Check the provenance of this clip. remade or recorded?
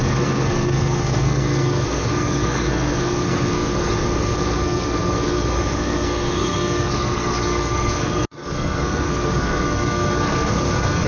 remade